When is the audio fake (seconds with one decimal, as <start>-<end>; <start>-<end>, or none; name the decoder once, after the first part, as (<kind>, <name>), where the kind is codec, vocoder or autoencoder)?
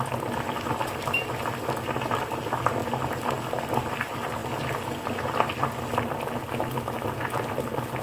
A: none